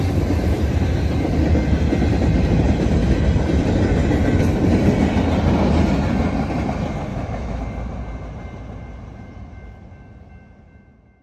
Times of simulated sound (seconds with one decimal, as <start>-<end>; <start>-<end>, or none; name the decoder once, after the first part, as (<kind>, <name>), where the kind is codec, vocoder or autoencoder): 7.1-7.6 (autoencoder, DAC-VAE)